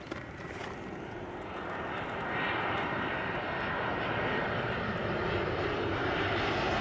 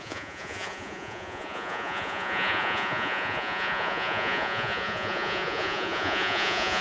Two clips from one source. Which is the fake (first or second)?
second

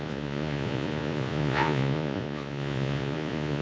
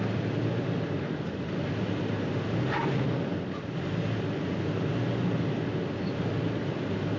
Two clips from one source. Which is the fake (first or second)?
first